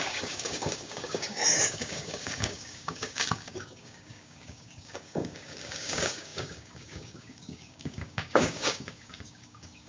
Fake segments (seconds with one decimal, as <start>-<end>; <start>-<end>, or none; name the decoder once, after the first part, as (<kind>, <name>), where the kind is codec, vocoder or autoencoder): 0.0-9.9 (codec, DAC)